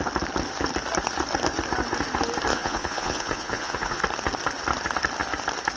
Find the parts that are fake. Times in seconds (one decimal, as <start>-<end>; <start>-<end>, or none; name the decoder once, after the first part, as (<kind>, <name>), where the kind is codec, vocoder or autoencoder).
2.5-4.0 (vocoder, Vocos)